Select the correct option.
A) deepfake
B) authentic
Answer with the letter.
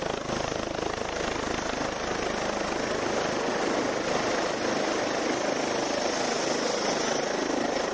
B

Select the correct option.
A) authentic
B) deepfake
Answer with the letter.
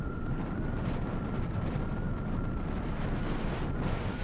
A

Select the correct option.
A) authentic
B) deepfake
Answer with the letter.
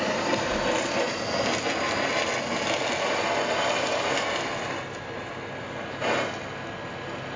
A